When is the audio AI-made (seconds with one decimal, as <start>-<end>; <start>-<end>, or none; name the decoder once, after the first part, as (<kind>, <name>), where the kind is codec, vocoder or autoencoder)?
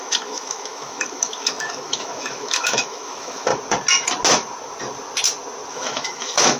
0.0-3.5 (autoencoder, DAC-VAE); 5.7-6.6